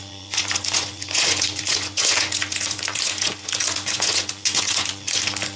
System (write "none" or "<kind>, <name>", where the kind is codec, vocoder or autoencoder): vocoder, Vocos